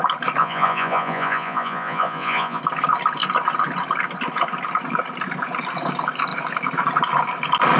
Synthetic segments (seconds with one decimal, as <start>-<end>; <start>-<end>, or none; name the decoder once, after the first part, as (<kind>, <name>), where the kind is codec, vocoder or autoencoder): 0.4-2.6 (vocoder, Vocos)